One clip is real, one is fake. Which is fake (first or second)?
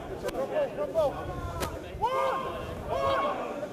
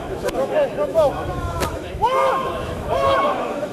second